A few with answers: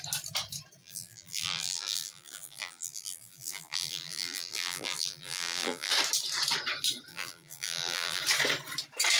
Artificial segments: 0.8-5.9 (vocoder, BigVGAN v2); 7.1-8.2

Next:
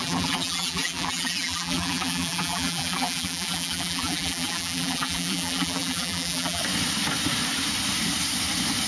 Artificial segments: 0.0-6.6 (vocoder, BigVGAN v2)

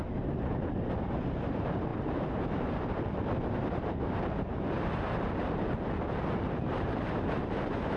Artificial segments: 0.0-8.0 (vocoder, BigVGAN v2)

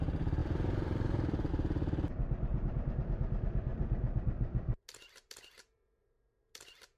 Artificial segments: 0.4-1.5 (vocoder, BigVGAN v2); 3.7-4.2